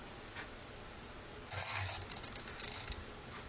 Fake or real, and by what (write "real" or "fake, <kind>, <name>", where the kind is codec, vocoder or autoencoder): real